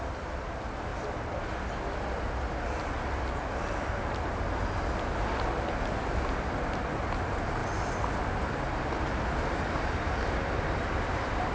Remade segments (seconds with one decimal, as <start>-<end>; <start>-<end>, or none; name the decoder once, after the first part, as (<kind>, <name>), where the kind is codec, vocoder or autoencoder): none